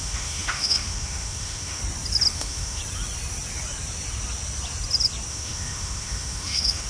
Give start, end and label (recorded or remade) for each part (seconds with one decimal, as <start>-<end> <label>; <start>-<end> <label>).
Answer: 0.0-1.8 remade; 1.8-2.3 recorded; 2.3-2.8 remade; 2.8-5.3 recorded; 5.3-6.9 remade